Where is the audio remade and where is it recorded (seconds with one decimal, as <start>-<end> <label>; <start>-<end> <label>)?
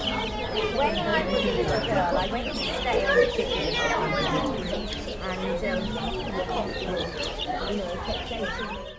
0.0-6.7 recorded; 6.7-7.6 remade; 7.6-9.0 recorded